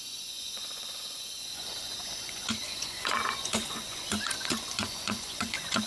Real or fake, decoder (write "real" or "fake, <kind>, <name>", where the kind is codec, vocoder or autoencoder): fake, vocoder, Vocos